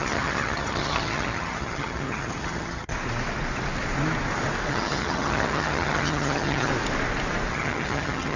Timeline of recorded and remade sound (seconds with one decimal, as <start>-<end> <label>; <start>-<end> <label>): 0.0-2.9 remade; 2.9-4.7 recorded; 4.7-6.7 remade; 6.7-7.5 recorded; 7.5-8.4 remade